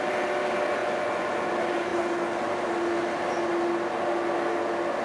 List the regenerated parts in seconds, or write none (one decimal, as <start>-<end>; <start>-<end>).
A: 0.8-1.3